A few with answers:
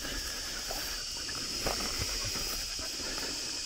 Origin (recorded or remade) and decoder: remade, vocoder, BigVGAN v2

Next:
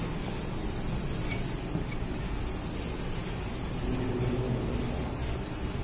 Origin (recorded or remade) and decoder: recorded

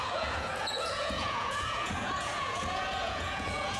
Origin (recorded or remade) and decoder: remade, vocoder, Vocos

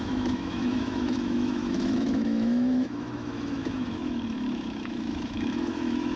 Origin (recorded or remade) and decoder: remade, autoencoder, DAC-VAE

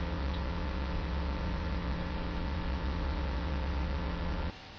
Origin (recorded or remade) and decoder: remade, vocoder, WaveNeXt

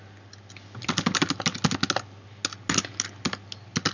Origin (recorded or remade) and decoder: recorded